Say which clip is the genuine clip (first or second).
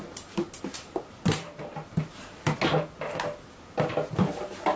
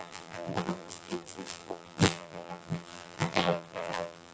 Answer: first